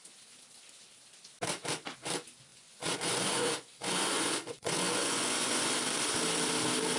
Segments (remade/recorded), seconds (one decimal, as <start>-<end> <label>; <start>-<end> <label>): 0.0-2.5 recorded; 2.5-5.7 remade; 5.7-7.0 recorded